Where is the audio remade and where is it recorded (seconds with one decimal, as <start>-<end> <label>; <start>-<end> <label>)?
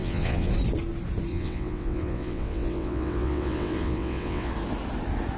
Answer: 0.0-0.5 remade; 0.5-1.3 recorded; 1.3-4.5 remade; 4.5-5.4 recorded